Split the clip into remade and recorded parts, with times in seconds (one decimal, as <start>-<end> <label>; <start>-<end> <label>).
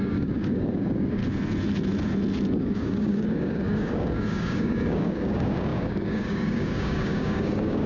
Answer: 0.0-1.2 remade; 1.2-2.6 recorded; 2.6-7.9 remade